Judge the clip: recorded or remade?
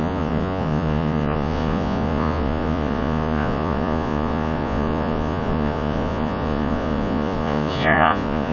remade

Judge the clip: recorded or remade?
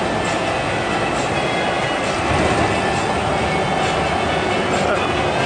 recorded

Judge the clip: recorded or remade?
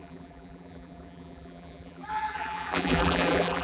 remade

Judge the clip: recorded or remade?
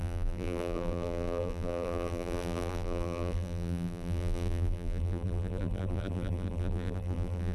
remade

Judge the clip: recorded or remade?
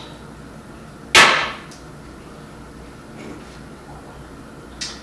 recorded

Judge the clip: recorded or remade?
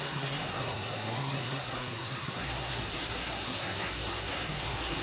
remade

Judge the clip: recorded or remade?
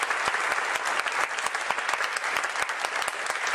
recorded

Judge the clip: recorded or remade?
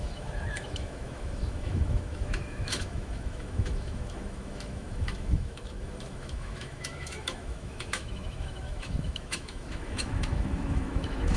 remade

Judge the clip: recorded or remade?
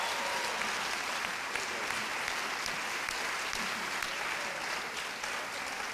recorded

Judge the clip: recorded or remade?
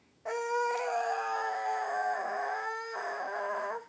remade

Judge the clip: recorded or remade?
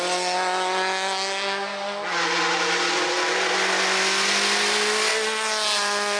recorded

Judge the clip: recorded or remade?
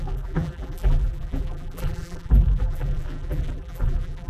remade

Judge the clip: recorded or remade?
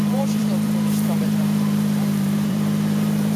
remade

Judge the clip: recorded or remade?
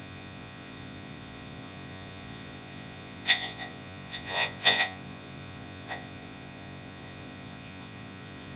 remade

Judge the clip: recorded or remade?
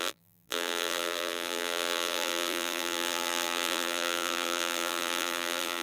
remade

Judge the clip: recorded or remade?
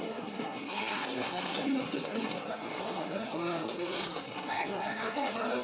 remade